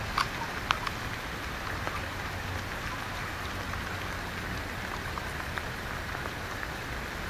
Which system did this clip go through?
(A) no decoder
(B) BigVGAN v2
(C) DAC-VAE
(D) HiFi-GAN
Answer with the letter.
A